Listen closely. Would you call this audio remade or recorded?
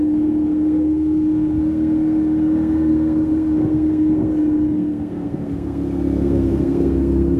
remade